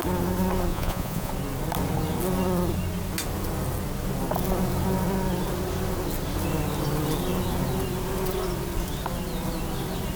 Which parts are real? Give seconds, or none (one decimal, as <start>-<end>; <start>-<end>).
0.0-0.7; 1.3-10.2